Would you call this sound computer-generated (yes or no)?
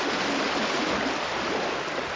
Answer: no